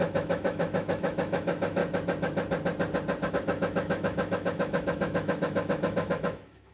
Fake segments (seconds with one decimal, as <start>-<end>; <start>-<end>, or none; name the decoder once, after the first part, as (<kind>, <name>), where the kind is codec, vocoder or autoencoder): 0.0-1.8 (autoencoder, DAC-VAE); 3.3-6.7